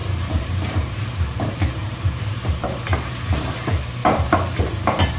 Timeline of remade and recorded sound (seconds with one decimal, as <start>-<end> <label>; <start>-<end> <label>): 0.0-3.1 remade; 3.1-4.0 recorded; 4.0-4.6 remade; 4.6-5.2 recorded